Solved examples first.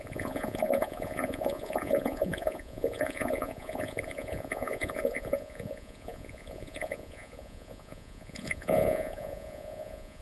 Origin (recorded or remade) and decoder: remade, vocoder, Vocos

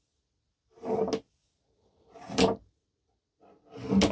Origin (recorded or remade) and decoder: recorded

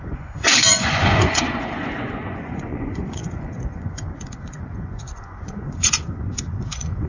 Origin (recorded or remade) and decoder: remade, vocoder, Vocos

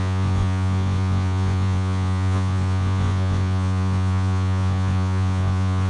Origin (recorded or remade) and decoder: remade, vocoder, Vocos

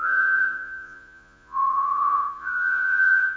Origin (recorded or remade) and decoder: remade, vocoder, Vocos